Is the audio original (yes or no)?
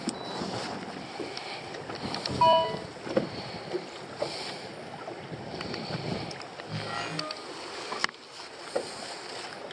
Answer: yes